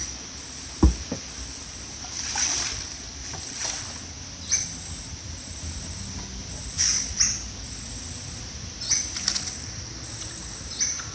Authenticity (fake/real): real